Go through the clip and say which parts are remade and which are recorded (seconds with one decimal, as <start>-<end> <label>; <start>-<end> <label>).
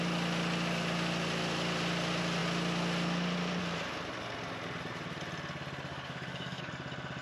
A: 0.0-5.9 recorded; 5.9-6.7 remade; 6.7-7.2 recorded